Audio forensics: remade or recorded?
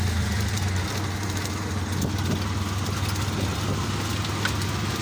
recorded